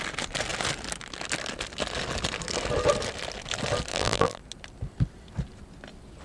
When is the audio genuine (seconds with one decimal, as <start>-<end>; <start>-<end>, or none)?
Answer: 0.0-3.9; 4.4-6.2